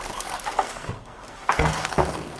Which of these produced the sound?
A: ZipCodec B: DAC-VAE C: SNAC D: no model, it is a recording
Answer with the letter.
C